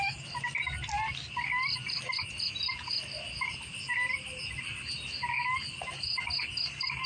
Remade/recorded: recorded